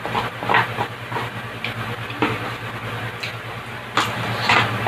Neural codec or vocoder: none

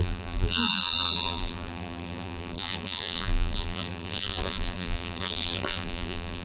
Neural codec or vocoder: vocoder, BigVGAN v2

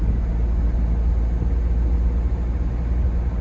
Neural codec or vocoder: none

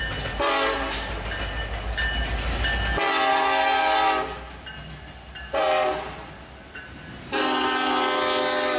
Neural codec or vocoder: none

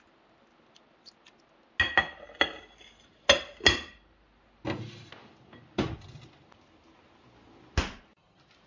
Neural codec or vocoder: none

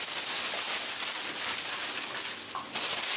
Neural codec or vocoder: none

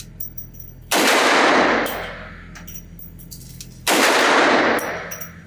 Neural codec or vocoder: none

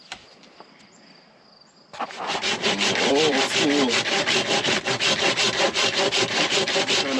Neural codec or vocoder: vocoder, BigVGAN v2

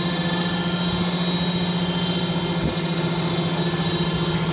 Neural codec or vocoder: none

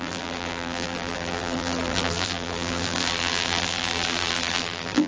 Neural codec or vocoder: vocoder, BigVGAN v2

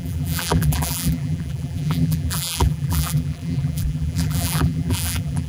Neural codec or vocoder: vocoder, BigVGAN v2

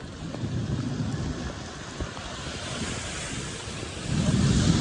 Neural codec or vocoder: vocoder, BigVGAN v2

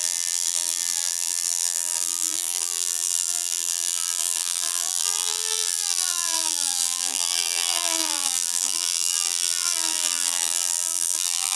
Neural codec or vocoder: vocoder, BigVGAN v2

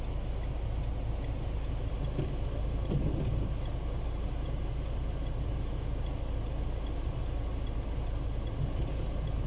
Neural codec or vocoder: none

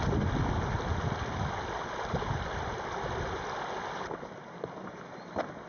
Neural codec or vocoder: none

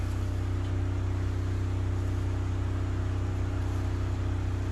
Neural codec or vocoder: none